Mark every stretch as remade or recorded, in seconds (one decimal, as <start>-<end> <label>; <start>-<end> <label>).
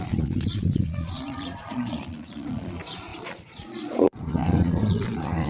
0.0-5.5 remade